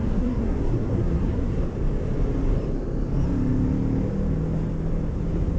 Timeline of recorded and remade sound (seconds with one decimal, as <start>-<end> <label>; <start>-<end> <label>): 0.0-1.7 remade; 1.7-5.6 recorded